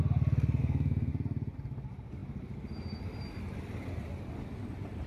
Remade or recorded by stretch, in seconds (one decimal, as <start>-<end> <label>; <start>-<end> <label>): 0.0-0.6 recorded; 0.6-1.1 remade; 1.1-5.1 recorded